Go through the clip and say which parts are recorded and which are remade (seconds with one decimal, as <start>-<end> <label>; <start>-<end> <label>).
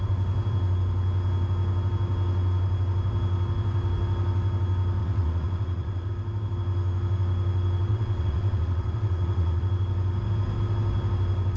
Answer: 0.0-5.0 recorded; 5.0-6.1 remade; 6.1-7.9 recorded; 7.9-9.6 remade; 9.6-11.6 recorded